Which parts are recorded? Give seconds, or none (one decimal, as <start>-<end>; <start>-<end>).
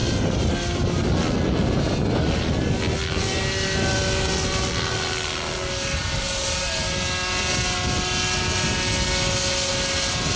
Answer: 0.0-10.4